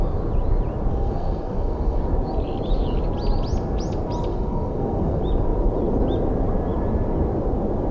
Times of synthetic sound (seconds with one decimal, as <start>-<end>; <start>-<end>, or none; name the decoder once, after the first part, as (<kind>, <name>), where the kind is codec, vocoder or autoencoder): 0.9-2.0 (codec, SNAC); 4.3-5.2